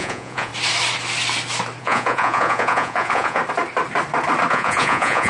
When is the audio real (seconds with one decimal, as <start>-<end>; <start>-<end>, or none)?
0.5-1.8; 3.4-4.5